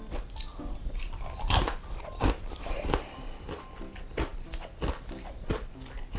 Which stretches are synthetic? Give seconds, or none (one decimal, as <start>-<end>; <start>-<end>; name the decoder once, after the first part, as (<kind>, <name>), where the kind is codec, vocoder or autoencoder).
0.5-2.7 (vocoder, BigVGAN v2)